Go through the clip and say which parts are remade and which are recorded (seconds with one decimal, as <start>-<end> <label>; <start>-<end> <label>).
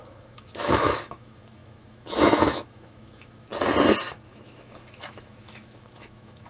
0.0-3.5 remade; 3.5-4.1 recorded; 4.1-6.5 remade